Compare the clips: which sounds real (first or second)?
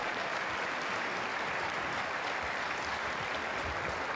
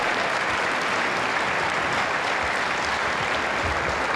second